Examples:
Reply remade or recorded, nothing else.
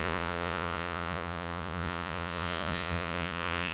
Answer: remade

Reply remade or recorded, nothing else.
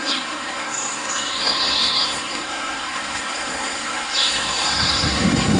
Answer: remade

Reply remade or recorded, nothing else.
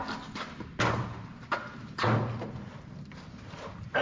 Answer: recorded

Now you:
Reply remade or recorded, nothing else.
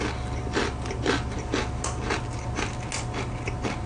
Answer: recorded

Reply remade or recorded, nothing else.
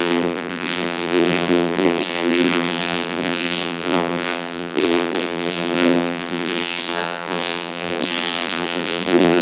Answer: remade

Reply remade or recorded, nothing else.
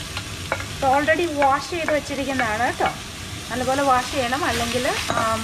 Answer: recorded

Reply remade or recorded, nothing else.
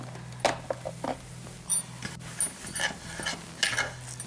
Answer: recorded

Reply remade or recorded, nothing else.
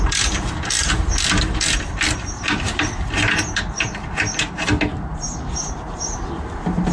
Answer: recorded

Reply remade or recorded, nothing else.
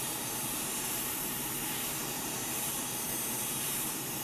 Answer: remade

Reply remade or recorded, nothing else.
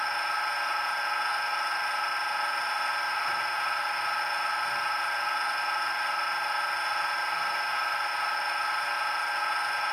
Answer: recorded